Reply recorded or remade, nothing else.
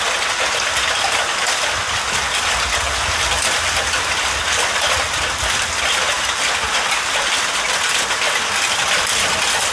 recorded